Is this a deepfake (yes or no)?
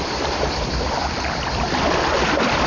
yes